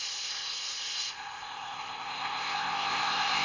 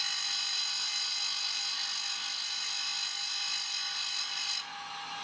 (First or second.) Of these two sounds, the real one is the second